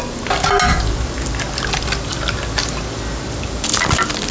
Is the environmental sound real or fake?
real